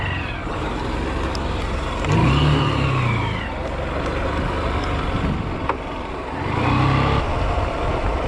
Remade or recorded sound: recorded